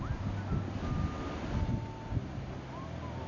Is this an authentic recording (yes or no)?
yes